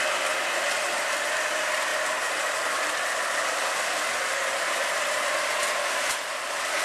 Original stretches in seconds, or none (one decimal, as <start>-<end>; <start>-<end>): none